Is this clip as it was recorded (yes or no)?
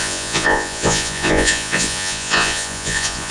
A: no